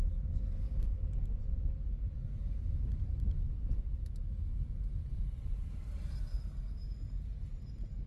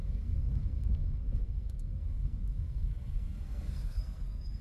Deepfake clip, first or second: second